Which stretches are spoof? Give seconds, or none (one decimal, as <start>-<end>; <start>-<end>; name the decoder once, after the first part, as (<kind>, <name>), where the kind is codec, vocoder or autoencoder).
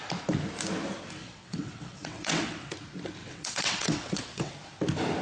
1.2-2.7 (vocoder, WaveNeXt); 3.2-4.5